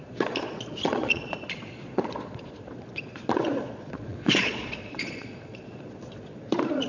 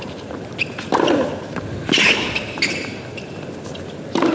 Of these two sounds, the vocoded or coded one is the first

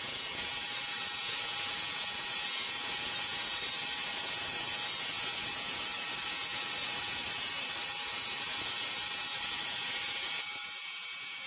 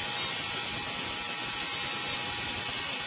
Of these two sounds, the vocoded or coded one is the first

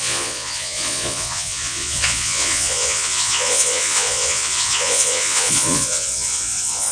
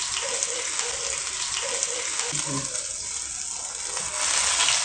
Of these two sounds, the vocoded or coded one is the first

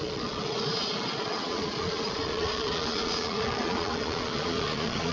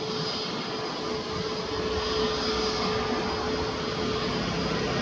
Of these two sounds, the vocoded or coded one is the first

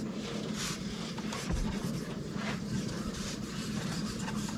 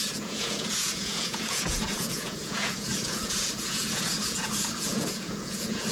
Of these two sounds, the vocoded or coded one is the second